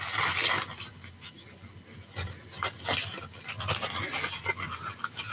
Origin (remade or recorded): recorded